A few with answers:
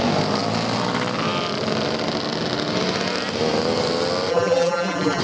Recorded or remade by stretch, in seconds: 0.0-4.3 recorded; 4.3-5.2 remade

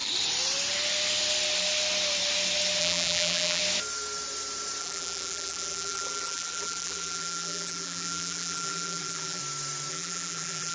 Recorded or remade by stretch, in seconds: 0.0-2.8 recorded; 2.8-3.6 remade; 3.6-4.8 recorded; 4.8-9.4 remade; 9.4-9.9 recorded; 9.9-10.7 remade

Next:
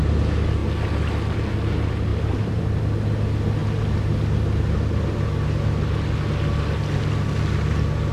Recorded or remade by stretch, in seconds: 0.0-2.1 recorded; 2.1-2.8 remade; 2.8-8.1 recorded

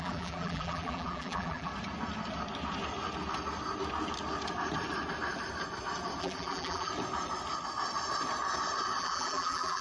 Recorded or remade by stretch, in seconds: 0.0-1.7 remade; 1.7-6.2 recorded; 6.2-6.9 remade; 6.9-9.0 recorded; 9.0-9.8 remade